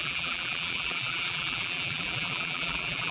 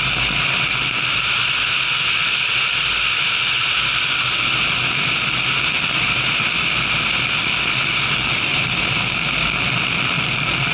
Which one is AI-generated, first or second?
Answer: first